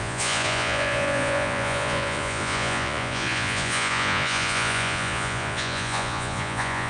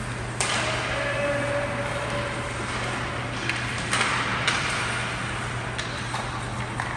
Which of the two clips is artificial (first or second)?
first